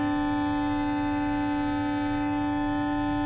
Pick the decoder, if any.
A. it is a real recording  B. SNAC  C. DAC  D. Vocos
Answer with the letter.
A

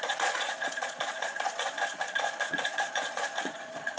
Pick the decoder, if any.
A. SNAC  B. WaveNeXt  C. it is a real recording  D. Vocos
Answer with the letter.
D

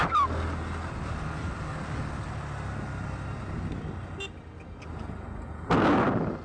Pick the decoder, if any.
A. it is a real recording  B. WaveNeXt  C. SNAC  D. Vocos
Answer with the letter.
A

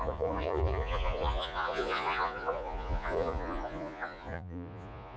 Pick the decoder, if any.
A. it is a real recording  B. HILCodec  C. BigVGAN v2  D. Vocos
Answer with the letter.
D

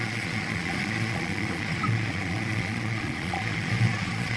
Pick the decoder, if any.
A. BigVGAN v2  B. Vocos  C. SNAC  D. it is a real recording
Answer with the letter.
B